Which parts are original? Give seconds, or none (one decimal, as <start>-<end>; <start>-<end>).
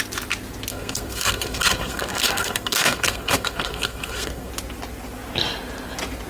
0.0-0.7; 4.5-6.3